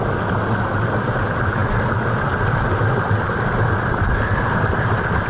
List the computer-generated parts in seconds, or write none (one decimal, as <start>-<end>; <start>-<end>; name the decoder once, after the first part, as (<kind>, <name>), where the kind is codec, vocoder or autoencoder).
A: none